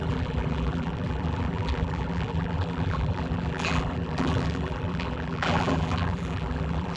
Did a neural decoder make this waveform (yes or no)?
yes